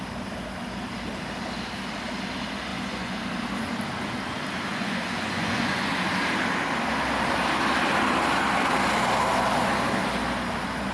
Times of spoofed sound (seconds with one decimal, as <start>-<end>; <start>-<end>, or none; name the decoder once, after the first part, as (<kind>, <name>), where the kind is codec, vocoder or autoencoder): 2.7-3.2 (vocoder, Vocos); 4.7-5.9